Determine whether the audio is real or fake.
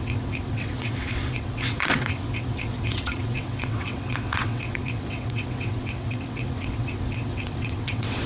fake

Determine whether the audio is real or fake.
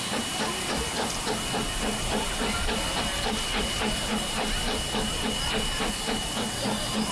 real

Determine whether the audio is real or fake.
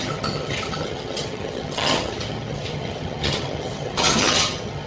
fake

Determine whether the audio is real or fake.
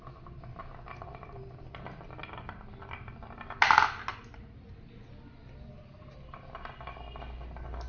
real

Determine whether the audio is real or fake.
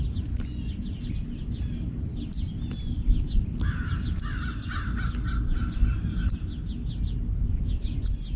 real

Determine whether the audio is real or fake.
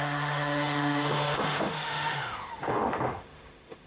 fake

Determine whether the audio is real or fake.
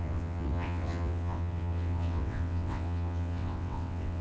fake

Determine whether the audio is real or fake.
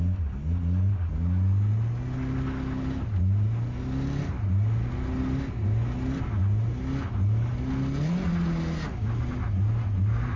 real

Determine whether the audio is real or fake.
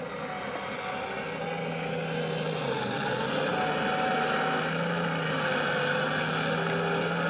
real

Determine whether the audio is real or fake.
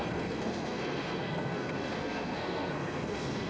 fake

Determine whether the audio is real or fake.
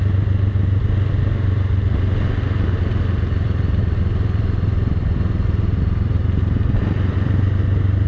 real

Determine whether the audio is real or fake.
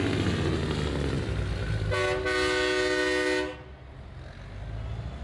real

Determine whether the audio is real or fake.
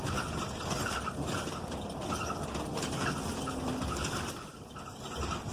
real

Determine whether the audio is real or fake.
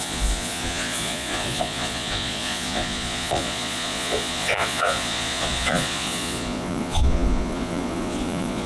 fake